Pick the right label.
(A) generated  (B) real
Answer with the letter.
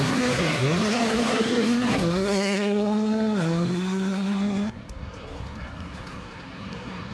A